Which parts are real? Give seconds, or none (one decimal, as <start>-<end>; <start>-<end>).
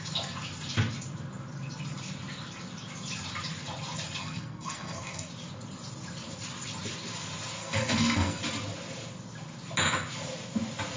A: 0.0-4.2; 5.3-7.6; 8.4-11.0